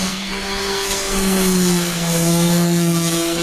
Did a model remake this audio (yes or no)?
yes